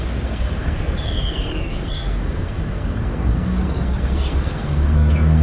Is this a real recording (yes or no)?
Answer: no